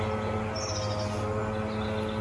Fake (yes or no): no